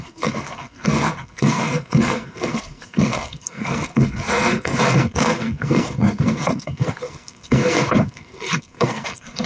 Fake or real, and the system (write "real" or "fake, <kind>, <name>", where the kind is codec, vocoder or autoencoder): fake, codec, SNAC